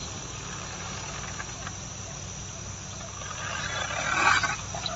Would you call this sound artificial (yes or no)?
no